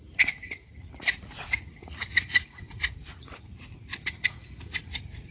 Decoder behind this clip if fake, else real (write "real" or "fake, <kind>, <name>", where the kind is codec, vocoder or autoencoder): fake, vocoder, Vocos